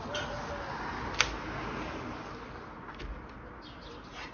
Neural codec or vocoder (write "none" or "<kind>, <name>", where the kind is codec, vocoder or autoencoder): none